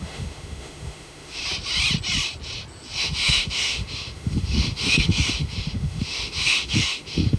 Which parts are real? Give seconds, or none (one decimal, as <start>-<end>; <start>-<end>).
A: 1.4-3.0